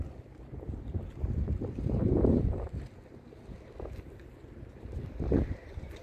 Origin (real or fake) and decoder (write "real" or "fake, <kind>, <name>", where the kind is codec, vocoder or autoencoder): fake, vocoder, BigVGAN v2